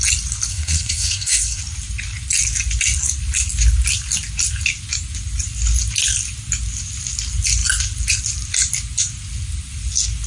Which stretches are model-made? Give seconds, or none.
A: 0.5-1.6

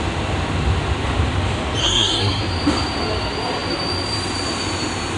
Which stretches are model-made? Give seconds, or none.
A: 1.8-2.4